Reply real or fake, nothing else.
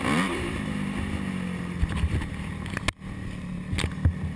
real